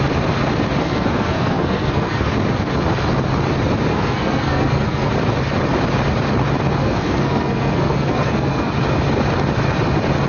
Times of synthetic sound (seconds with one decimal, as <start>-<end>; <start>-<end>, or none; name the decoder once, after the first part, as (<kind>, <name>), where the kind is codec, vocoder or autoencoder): 0.8-2.3 (codec, SNAC); 3.9-5.1; 6.8-8.7